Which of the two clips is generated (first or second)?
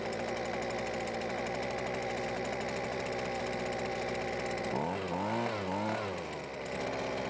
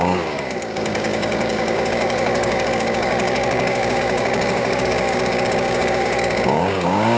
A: second